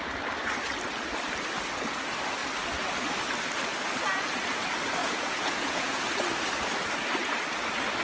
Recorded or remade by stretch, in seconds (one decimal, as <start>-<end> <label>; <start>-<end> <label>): 0.0-5.0 recorded; 5.0-6.1 remade; 6.1-8.0 recorded